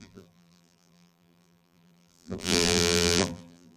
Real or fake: fake